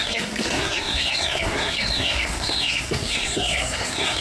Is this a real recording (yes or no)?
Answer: no